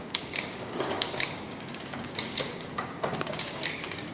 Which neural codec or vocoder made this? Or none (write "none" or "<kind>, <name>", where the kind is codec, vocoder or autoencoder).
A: codec, DAC